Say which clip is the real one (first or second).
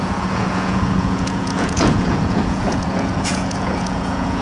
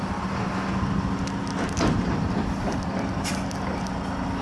second